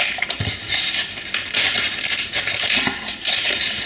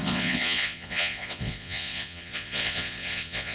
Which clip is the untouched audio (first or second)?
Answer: first